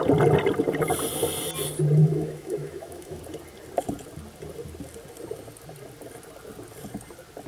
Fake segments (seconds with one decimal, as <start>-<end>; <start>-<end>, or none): 2.0-3.2